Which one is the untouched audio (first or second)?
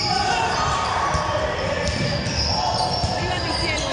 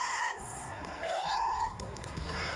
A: first